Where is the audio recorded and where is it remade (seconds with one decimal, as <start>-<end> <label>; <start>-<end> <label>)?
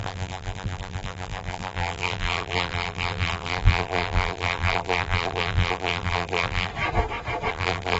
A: 0.0-6.7 remade; 6.7-7.5 recorded; 7.5-8.0 remade